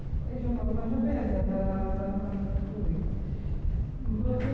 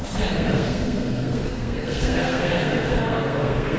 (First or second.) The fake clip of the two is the second